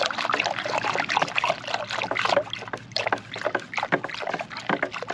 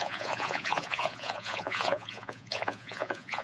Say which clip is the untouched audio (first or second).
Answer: first